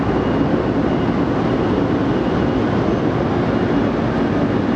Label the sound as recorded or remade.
recorded